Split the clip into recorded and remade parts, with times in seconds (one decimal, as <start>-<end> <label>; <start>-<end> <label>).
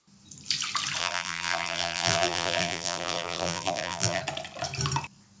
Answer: 0.0-1.0 recorded; 1.0-4.2 remade; 4.2-5.4 recorded